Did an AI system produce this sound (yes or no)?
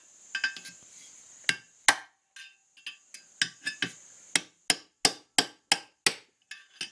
no